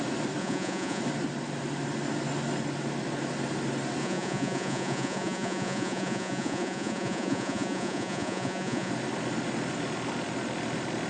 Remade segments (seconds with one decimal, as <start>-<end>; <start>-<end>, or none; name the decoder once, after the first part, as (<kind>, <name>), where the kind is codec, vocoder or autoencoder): 0.4-1.0 (vocoder, Vocos); 4.0-8.9